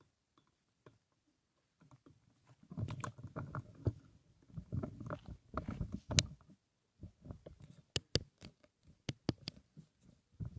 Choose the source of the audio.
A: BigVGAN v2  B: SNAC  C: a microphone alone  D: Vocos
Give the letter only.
C